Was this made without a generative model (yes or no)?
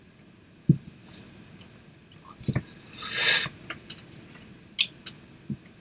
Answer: yes